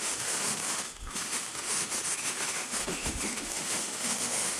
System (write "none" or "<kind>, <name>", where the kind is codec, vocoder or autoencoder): autoencoder, DAC-VAE